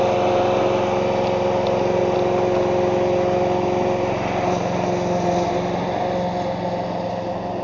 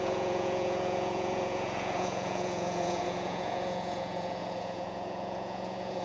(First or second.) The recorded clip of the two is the first